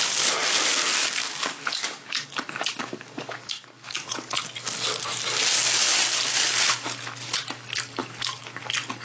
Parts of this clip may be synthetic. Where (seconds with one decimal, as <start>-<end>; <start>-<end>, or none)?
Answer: 1.0-4.4; 8.0-8.6